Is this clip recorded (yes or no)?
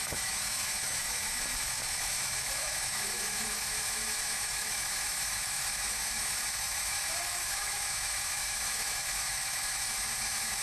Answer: no